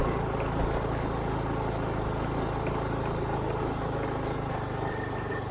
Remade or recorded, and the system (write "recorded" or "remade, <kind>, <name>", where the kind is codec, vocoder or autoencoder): recorded